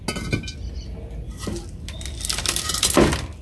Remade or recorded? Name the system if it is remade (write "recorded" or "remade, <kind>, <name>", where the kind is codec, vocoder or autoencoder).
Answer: recorded